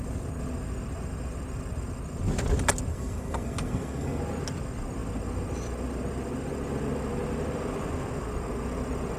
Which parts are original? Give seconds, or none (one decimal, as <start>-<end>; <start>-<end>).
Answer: 0.0-2.9; 4.2-9.2